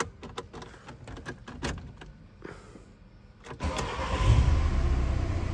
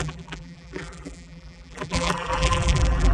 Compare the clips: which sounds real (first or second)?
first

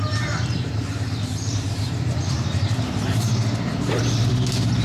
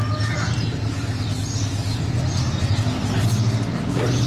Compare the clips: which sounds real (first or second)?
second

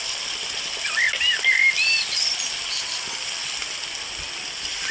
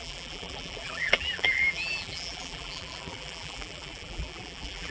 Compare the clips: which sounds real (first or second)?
first